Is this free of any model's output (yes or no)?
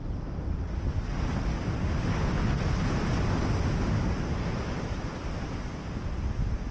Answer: yes